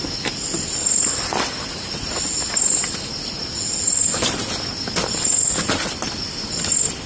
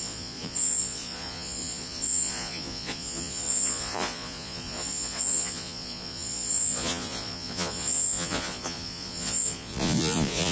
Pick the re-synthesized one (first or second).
second